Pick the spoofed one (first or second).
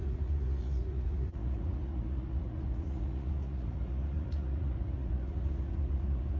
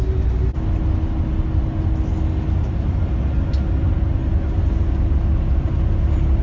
first